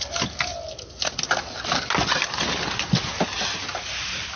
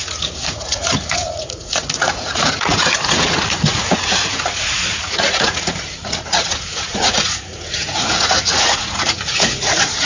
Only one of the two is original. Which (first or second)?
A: first